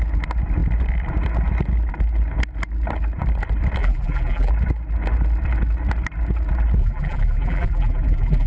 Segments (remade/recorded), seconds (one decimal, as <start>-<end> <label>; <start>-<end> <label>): 0.0-3.8 recorded; 3.8-4.5 remade; 4.5-6.8 recorded; 6.8-8.5 remade